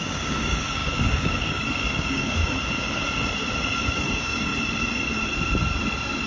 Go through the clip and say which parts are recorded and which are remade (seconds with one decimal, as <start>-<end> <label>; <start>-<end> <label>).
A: 0.0-2.4 remade; 2.4-3.9 recorded; 3.9-4.5 remade; 4.5-6.3 recorded